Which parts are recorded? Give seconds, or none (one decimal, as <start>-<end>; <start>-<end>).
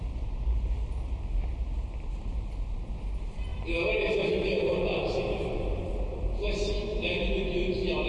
0.0-3.5; 5.8-6.9